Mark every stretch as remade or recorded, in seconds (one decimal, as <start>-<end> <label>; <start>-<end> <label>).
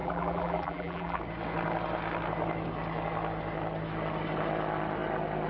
0.0-1.2 remade; 1.2-5.5 recorded